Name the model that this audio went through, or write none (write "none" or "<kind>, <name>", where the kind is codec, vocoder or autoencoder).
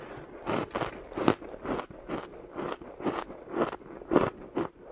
none